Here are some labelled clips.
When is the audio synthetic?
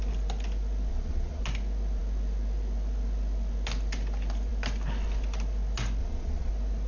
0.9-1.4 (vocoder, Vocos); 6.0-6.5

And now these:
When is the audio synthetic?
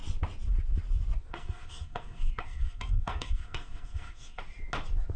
1.3-4.4 (codec, SNAC)